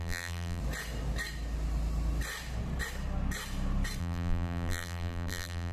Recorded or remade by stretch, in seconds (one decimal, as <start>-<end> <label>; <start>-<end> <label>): 0.0-0.6 remade; 0.6-4.0 recorded; 4.0-5.7 remade